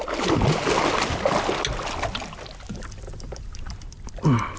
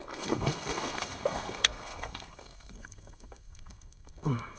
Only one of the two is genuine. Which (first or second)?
first